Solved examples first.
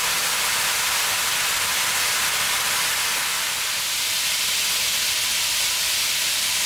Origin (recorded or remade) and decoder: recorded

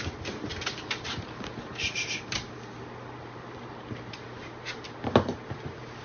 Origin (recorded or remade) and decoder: remade, vocoder, BigVGAN v2